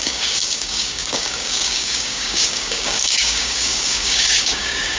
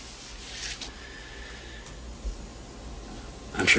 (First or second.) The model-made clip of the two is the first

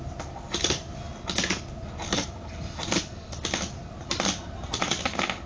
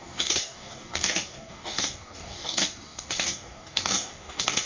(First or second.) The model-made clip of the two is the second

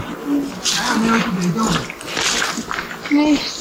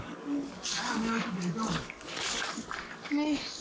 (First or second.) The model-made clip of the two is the second